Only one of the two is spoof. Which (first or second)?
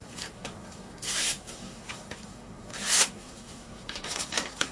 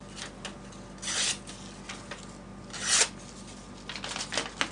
first